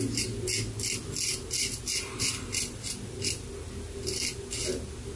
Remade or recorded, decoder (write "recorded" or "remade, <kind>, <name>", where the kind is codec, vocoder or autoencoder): recorded